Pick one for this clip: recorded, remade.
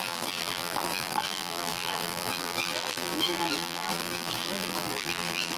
remade